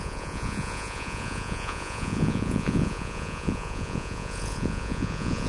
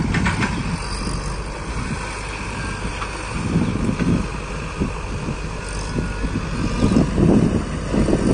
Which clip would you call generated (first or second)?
first